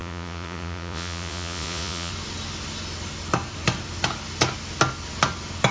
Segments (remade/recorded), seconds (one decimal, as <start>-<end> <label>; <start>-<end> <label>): 0.0-2.1 remade; 2.1-5.7 recorded